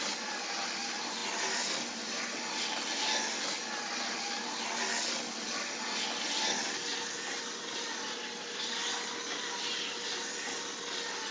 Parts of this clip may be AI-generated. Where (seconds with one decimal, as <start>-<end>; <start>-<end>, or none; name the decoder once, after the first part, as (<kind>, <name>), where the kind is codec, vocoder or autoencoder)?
none